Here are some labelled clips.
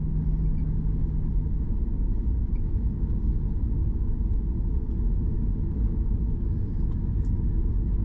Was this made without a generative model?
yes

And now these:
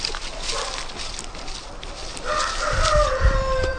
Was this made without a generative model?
yes